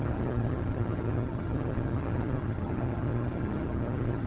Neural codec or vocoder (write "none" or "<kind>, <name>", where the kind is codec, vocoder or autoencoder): vocoder, HiFi-GAN